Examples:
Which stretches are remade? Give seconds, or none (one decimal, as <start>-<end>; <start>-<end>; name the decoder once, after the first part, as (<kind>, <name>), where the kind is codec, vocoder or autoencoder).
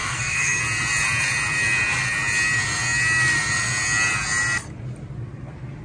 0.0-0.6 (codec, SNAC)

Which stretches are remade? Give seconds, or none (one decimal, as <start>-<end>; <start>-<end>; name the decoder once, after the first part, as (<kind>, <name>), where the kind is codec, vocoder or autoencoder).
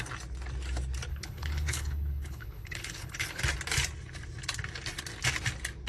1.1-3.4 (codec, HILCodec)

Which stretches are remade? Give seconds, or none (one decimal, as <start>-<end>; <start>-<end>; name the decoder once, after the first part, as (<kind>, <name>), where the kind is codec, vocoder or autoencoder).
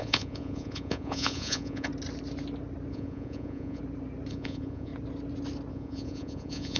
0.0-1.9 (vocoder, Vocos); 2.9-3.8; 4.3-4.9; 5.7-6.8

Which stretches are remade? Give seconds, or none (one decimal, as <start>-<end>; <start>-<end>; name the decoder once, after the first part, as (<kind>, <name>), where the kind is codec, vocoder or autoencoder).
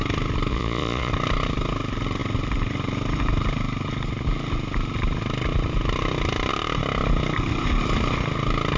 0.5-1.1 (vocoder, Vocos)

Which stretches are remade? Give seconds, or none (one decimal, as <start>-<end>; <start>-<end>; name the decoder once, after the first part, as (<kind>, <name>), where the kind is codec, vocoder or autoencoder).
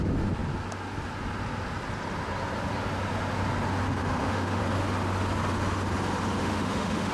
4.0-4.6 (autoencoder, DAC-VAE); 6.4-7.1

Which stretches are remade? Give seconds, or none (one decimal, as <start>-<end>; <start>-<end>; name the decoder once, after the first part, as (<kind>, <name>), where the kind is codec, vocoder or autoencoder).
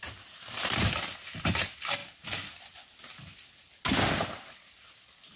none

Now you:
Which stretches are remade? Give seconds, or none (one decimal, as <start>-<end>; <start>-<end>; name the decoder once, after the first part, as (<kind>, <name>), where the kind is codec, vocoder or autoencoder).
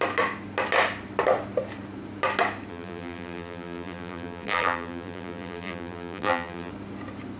2.7-6.7 (vocoder, BigVGAN v2)